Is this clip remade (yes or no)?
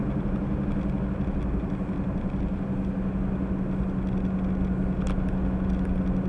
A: no